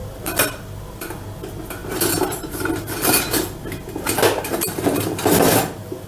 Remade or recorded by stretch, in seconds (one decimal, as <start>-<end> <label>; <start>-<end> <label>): 0.0-6.1 recorded